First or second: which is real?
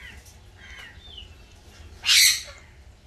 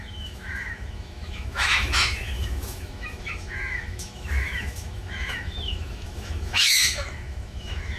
first